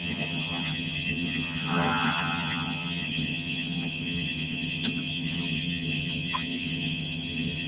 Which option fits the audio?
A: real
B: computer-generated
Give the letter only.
B